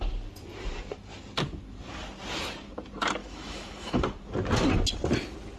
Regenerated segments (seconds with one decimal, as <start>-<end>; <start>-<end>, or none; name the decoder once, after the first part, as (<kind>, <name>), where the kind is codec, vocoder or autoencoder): 3.2-4.0 (autoencoder, DAC-VAE)